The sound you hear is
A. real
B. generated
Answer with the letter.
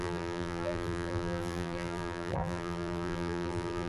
B